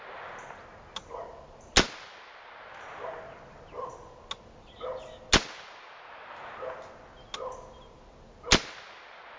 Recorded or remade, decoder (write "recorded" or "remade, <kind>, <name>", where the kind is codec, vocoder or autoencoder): recorded